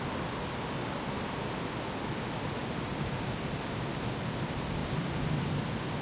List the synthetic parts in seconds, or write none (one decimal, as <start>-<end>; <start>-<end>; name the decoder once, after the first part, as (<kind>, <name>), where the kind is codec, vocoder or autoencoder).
2.6-3.4 (vocoder, BigVGAN v2); 4.8-5.6